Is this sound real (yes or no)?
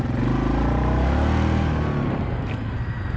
yes